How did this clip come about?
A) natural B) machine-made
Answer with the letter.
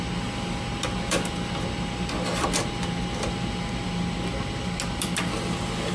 A